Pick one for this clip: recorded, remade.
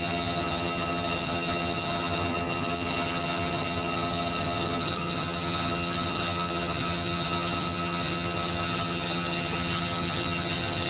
remade